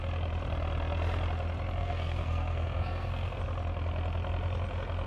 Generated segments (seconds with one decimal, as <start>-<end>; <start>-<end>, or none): 1.8-3.4